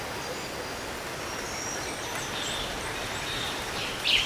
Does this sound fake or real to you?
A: real